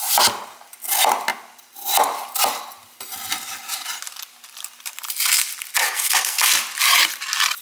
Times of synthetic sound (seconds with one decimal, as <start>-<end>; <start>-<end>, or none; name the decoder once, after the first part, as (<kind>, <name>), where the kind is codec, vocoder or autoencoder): 5.8-6.5 (codec, SNAC)

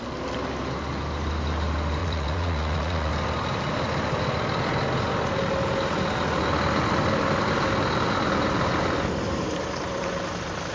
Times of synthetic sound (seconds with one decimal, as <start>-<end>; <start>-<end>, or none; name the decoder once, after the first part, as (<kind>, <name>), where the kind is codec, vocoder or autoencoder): 2.0-3.1 (vocoder, Vocos)

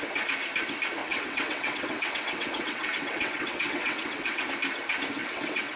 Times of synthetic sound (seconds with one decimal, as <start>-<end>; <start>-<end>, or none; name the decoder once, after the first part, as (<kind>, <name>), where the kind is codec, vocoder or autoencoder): 1.0-4.5 (vocoder, WaveNeXt); 5.2-5.8

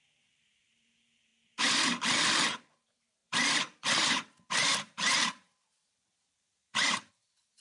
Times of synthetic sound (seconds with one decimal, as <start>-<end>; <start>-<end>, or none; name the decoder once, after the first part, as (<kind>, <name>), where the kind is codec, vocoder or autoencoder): 0.0-1.3 (vocoder, BigVGAN v2); 2.4-7.6